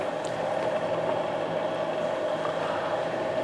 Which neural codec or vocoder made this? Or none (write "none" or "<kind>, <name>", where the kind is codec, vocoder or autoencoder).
none